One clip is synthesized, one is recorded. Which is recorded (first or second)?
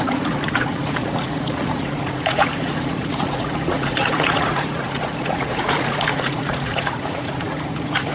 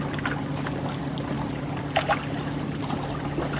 second